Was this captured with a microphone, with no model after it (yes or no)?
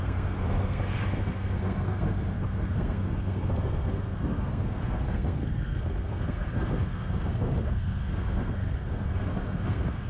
no